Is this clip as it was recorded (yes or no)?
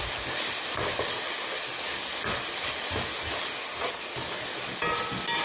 yes